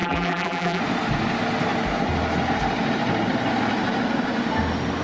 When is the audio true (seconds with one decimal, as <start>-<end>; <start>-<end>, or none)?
0.8-5.0